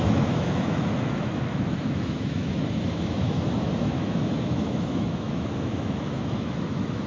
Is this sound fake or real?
fake